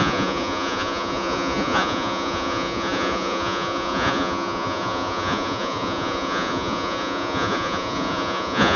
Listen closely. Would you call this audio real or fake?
fake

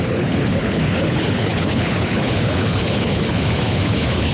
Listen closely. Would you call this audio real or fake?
fake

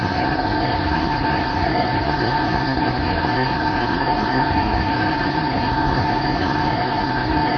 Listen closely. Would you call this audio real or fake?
fake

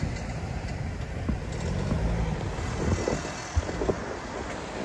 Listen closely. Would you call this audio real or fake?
real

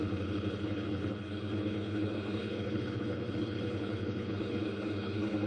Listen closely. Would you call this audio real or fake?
fake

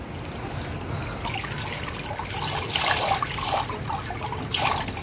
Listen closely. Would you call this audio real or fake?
real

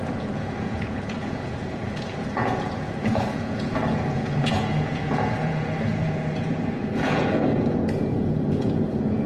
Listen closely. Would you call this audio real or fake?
fake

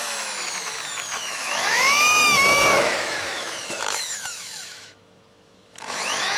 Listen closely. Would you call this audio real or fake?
fake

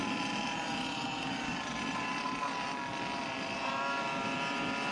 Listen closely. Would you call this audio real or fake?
real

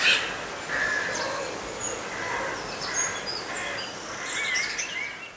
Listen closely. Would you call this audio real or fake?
real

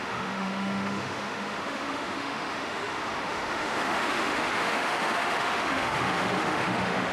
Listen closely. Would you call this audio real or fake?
fake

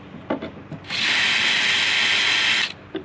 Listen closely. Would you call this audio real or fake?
real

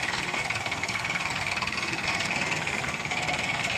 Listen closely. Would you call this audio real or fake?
fake